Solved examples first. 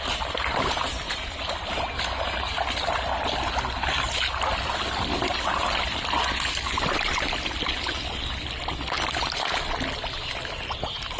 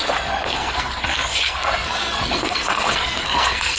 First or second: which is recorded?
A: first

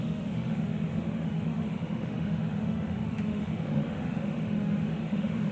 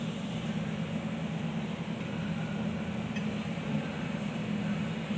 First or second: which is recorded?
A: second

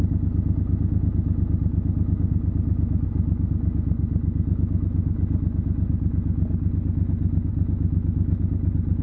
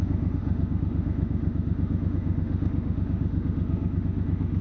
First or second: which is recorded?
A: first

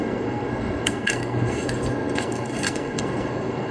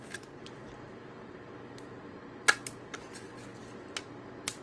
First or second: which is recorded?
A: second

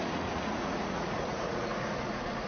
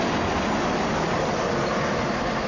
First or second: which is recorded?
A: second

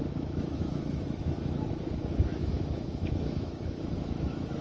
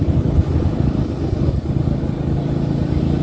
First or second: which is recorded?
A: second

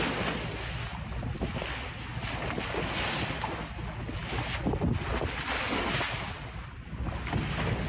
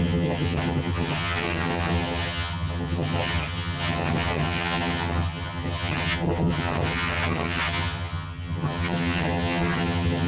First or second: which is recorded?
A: first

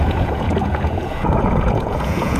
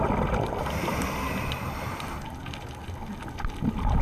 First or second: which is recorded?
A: second